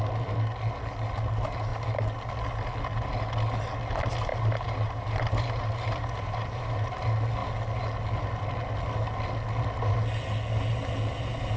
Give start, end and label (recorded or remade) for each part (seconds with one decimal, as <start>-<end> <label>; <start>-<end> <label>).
0.0-4.3 recorded; 4.3-6.9 remade; 6.9-11.6 recorded